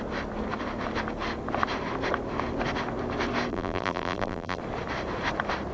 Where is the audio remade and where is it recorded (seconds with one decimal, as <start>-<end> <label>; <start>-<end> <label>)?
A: 0.0-3.5 recorded; 3.5-4.6 remade; 4.6-5.7 recorded